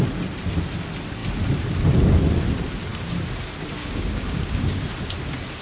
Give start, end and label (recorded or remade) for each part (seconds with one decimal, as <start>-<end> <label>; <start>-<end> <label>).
0.0-3.8 recorded; 3.8-4.8 remade; 4.8-5.6 recorded

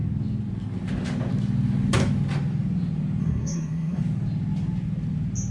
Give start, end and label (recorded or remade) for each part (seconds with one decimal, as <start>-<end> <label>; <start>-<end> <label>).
0.0-3.2 recorded; 3.2-4.0 remade; 4.0-5.5 recorded

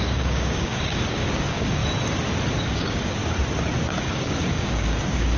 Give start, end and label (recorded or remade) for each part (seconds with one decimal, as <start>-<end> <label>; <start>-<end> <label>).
0.0-1.8 remade; 1.8-2.6 recorded; 2.6-3.2 remade; 3.2-4.0 recorded; 4.0-5.4 remade

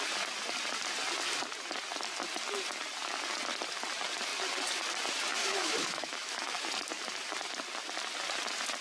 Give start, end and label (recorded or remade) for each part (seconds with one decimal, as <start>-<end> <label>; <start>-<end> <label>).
0.0-5.4 recorded; 5.4-6.6 remade; 6.6-8.8 recorded

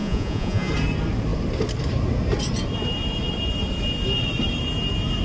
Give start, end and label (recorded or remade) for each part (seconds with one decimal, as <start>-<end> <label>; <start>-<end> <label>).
0.0-0.7 remade; 0.7-5.2 recorded

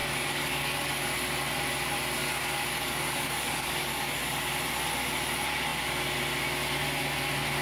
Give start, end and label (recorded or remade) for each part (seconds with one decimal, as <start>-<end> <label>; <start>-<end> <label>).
0.0-1.0 remade; 1.0-2.3 recorded; 2.3-4.2 remade; 4.2-7.6 recorded

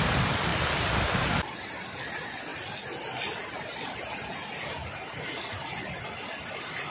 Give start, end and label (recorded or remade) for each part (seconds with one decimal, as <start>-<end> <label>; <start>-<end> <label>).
0.0-6.9 recorded

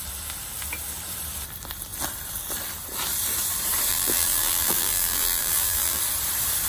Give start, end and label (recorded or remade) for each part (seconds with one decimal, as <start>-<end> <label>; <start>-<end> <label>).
0.0-3.9 recorded; 3.9-6.0 remade; 6.0-6.7 recorded